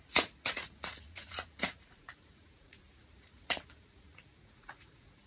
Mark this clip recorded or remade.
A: remade